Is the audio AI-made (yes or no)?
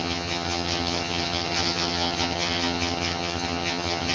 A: yes